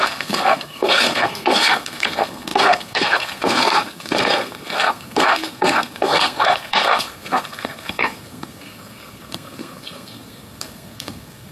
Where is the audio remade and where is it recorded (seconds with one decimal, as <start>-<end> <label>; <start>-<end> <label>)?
0.0-11.5 remade